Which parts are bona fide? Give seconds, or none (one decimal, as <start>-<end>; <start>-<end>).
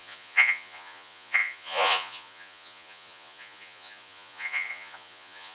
none